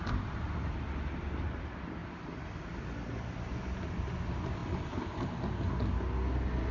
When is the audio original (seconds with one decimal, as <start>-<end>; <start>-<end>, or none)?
0.0-6.7